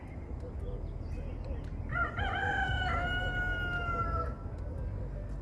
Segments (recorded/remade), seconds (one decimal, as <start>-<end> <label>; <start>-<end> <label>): 0.0-1.9 recorded; 1.9-2.5 remade; 2.5-5.4 recorded